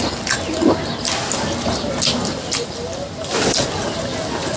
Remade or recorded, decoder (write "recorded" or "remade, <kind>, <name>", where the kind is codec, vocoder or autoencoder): recorded